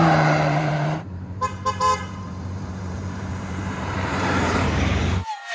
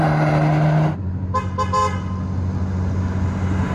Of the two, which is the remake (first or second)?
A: first